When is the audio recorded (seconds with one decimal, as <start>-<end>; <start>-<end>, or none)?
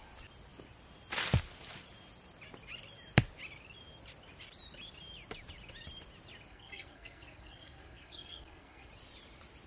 0.0-6.5; 8.9-9.7